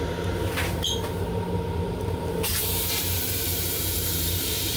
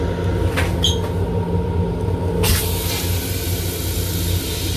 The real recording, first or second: second